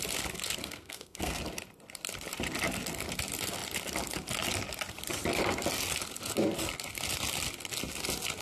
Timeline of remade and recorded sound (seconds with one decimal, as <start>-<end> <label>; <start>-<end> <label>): 0.0-0.6 recorded; 0.6-1.4 remade; 1.4-8.4 recorded